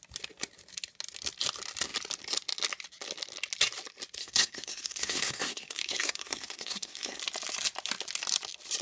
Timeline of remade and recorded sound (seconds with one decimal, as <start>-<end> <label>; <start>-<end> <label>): 0.0-4.2 recorded; 4.2-7.2 remade; 7.2-8.8 recorded